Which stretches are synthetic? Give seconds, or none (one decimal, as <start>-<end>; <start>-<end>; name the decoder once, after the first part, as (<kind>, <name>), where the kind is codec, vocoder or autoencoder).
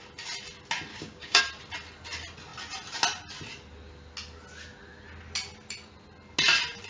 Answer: 0.9-1.4 (codec, DAC)